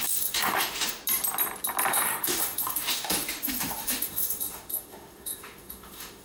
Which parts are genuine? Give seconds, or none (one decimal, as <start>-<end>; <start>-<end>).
1.0-1.9